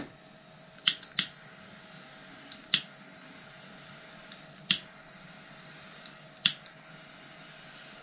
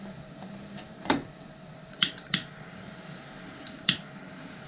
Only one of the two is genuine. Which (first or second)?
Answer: first